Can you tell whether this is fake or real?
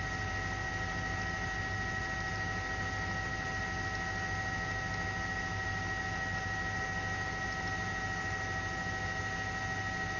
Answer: real